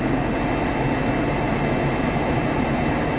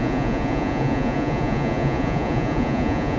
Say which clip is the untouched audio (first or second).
first